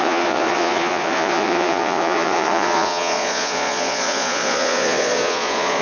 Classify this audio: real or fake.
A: fake